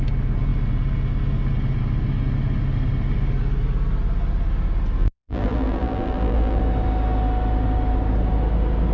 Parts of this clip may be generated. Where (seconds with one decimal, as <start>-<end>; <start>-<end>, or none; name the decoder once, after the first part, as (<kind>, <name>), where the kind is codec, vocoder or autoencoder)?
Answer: 5.0-6.6 (vocoder, BigVGAN v2)